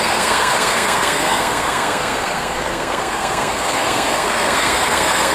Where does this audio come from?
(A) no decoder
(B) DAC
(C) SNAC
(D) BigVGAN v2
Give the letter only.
C